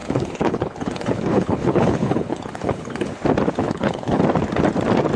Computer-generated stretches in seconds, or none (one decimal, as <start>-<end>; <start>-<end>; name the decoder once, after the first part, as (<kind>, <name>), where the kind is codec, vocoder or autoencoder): 0.0-3.1 (codec, HILCodec); 3.6-4.2